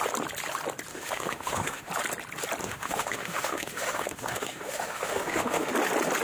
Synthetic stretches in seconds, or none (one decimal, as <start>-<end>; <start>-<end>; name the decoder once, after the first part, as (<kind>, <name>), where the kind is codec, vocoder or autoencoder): 0.9-1.9 (autoencoder, DAC-VAE); 2.6-5.7